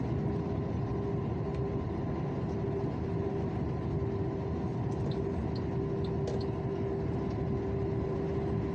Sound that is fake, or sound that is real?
real